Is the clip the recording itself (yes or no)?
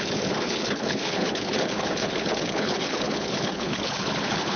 no